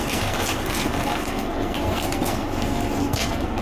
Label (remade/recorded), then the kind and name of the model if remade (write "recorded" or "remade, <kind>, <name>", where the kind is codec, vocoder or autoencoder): remade, codec, SNAC